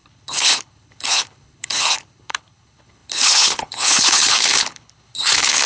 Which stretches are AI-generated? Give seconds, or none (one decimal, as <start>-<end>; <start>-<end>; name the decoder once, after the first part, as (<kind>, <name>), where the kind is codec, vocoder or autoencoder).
0.0-5.7 (codec, HILCodec)